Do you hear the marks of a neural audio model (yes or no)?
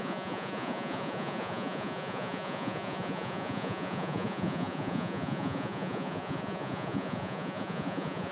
yes